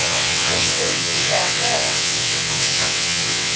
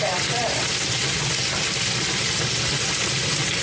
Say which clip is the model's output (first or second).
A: first